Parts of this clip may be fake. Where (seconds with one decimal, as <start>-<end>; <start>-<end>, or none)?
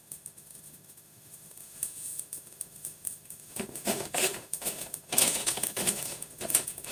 0.0-6.9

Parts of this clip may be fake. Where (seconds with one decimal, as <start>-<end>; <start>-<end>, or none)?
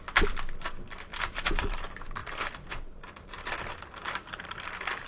1.1-1.8; 2.2-4.6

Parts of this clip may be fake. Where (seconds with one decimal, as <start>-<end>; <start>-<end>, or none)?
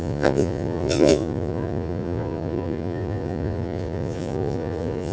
0.0-5.1